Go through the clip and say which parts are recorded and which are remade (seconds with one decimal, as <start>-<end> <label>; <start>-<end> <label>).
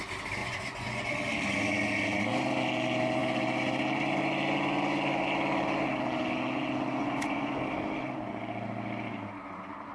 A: 0.0-0.4 recorded; 0.4-1.1 remade; 1.1-7.0 recorded; 7.0-7.6 remade; 7.6-9.9 recorded